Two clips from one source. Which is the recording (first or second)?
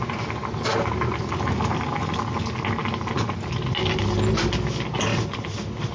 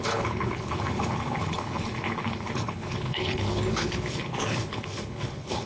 first